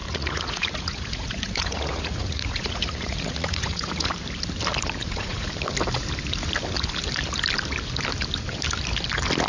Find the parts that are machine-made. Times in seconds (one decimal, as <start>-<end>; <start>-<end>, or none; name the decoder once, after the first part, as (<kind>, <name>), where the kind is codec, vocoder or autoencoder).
0.0-4.1 (vocoder, Vocos); 5.0-5.5